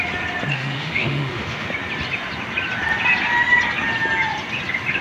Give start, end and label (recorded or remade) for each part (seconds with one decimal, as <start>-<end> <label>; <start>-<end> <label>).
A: 0.0-0.5 recorded; 0.5-1.7 remade; 1.7-5.0 recorded